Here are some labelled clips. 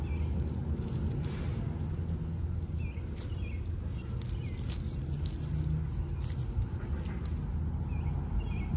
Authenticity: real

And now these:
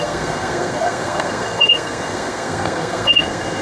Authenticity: fake